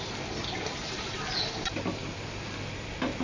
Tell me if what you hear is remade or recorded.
remade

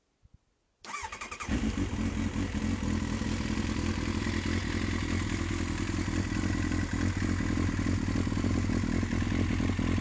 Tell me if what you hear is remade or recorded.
recorded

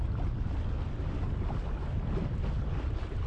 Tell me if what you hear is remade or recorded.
recorded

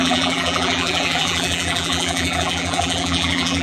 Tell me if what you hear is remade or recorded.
remade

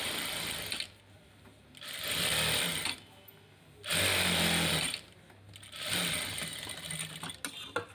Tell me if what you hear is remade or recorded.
recorded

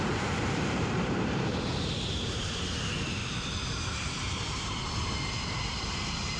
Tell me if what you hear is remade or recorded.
remade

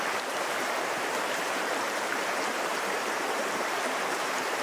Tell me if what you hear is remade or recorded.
remade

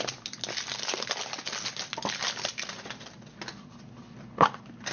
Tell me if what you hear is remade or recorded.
recorded